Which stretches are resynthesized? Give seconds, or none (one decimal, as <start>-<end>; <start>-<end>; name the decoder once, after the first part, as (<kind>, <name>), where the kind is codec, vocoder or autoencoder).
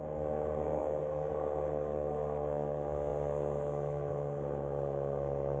0.0-5.6 (codec, SNAC)